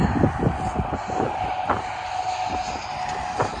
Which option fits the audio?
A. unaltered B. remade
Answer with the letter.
A